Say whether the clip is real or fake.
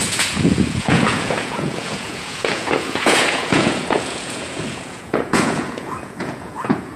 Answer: fake